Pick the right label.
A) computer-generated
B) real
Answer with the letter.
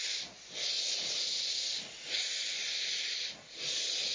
B